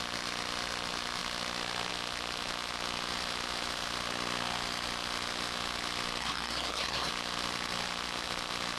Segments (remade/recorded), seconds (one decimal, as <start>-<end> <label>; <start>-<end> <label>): 0.0-6.2 recorded; 6.2-7.1 remade; 7.1-8.8 recorded